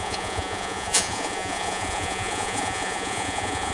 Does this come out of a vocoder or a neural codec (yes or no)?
yes